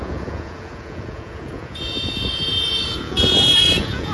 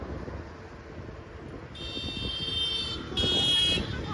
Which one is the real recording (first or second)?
second